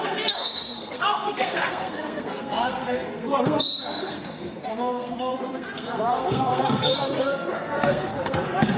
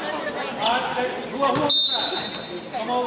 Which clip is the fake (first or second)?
first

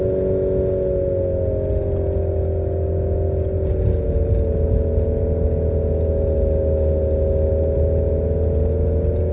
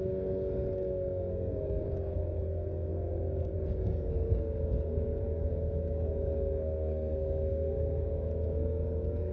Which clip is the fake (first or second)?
second